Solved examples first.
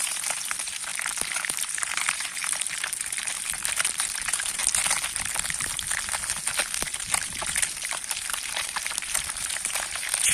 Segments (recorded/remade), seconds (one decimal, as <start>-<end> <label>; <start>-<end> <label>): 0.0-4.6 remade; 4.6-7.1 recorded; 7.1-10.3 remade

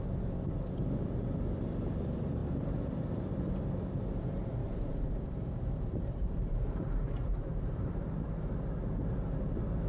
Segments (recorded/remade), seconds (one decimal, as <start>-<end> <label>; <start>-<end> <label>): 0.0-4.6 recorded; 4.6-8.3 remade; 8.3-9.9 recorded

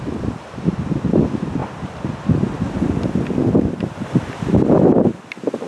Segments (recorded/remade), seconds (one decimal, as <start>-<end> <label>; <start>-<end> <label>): 0.0-5.7 recorded